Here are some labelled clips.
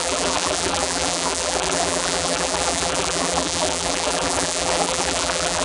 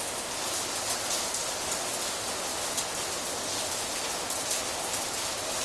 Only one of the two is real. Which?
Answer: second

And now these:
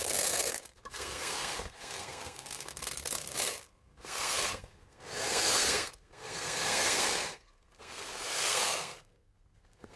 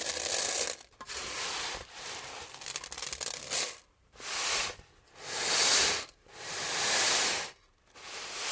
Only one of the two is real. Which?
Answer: second